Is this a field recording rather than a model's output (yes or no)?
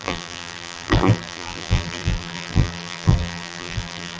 no